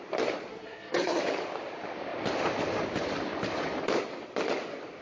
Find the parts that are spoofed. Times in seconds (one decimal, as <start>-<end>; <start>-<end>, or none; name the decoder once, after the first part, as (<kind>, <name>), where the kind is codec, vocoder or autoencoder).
0.5-1.2 (codec, SNAC)